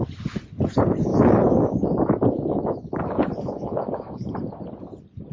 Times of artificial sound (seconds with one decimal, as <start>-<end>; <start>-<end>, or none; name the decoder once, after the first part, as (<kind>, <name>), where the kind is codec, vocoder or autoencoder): 1.1-4.3 (autoencoder, DAC-VAE)